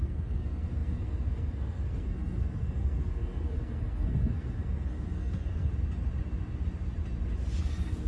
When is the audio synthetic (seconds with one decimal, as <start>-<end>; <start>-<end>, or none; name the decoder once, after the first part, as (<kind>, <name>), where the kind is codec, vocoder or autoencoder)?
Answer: 0.0-5.7 (codec, SNAC); 7.6-8.1